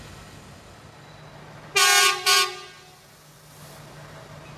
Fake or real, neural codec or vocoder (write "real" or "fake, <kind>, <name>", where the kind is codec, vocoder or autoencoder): real